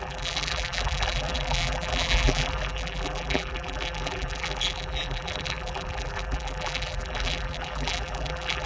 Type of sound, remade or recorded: remade